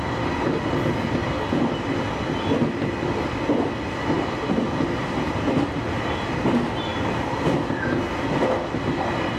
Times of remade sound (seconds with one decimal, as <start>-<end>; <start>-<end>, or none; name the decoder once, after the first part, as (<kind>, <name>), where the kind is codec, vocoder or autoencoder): none